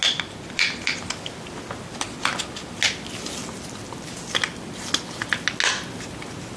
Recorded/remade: recorded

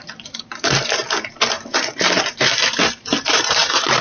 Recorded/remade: remade